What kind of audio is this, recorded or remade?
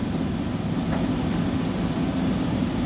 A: recorded